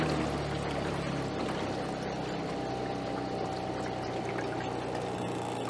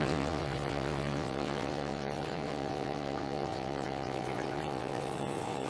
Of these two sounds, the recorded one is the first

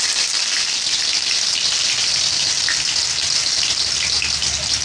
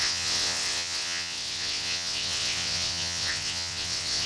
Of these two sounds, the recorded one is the first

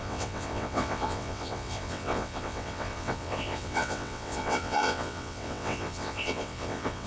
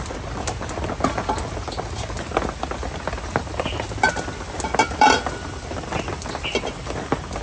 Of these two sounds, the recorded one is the second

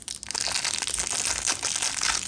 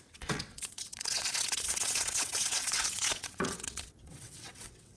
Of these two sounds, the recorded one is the first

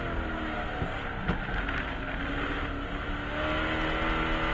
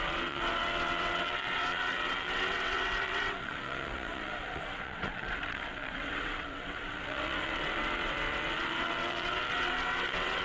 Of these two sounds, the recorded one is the first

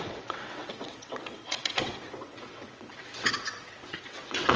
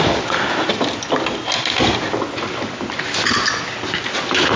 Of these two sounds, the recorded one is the second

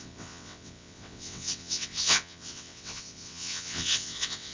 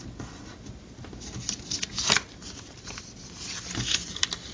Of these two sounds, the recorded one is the second